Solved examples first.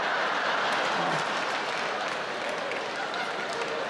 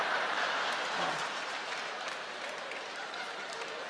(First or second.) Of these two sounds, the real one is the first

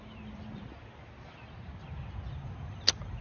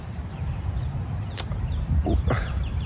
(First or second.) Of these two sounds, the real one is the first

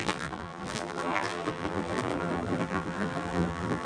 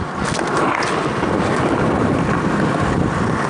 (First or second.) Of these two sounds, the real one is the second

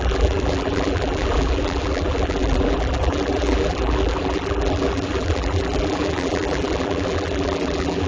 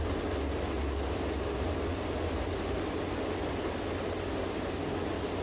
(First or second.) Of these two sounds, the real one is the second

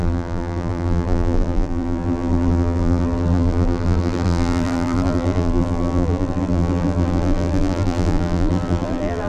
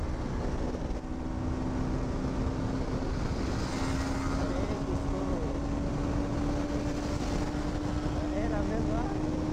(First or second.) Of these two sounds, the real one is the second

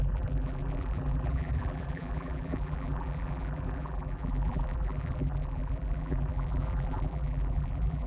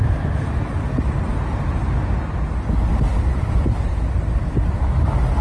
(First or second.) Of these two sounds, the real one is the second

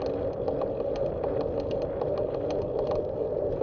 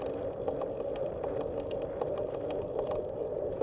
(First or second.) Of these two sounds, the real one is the first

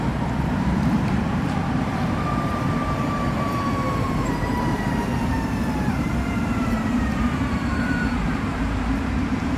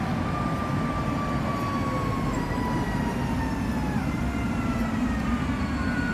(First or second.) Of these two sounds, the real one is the second